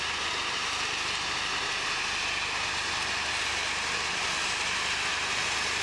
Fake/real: real